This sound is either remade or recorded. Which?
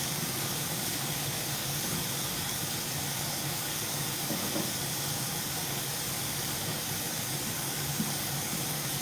remade